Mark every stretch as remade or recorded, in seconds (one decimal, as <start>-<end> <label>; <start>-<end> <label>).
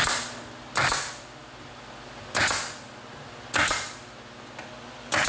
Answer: 0.0-5.3 recorded